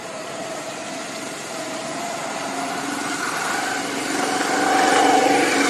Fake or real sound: real